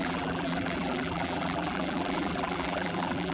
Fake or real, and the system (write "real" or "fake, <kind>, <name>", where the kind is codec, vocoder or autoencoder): fake, vocoder, BigVGAN v2